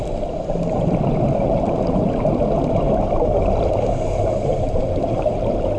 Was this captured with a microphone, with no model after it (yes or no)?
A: yes